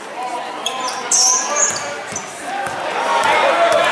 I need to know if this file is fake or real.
fake